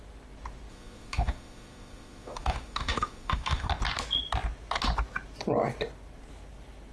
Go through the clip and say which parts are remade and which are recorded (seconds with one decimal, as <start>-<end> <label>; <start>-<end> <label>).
0.0-0.7 recorded; 0.7-3.7 remade; 3.7-6.9 recorded